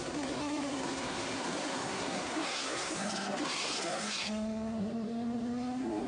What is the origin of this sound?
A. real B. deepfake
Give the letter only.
B